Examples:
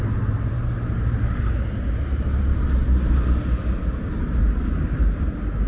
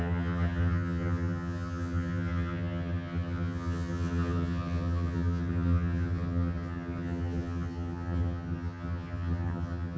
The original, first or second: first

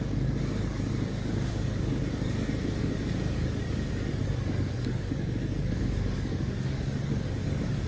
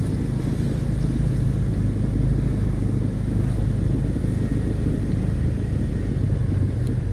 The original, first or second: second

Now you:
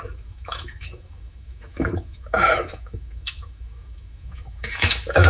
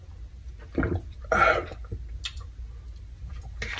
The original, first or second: second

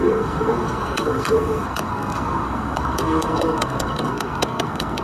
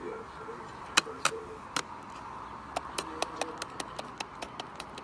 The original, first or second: second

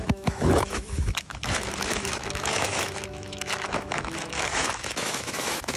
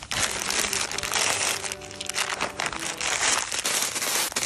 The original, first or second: second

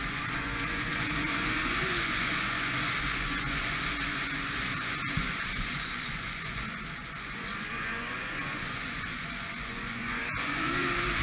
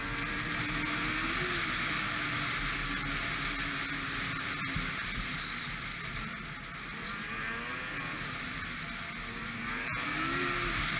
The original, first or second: second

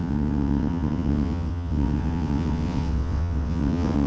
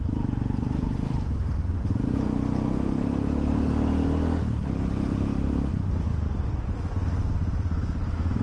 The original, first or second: second